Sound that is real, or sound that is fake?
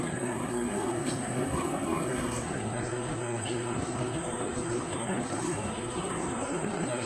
fake